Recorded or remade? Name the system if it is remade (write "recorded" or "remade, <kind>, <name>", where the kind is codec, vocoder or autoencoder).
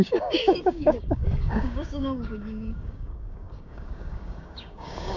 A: remade, codec, DAC